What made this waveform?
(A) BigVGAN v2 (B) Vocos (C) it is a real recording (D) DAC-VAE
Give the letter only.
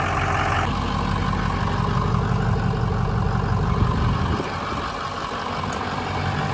C